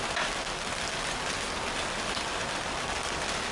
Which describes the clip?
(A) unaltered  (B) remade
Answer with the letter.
A